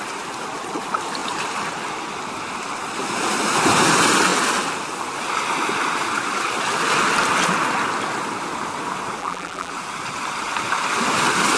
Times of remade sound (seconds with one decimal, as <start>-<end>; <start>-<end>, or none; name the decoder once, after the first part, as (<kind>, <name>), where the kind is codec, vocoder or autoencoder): 9.2-9.7 (vocoder, BigVGAN v2)